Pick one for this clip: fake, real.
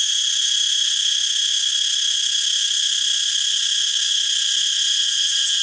real